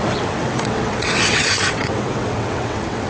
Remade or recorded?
remade